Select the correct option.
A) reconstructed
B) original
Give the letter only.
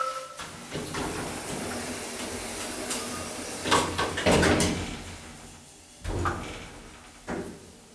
B